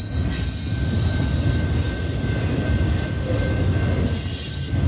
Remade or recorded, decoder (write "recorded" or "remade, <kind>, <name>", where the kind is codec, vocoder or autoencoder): recorded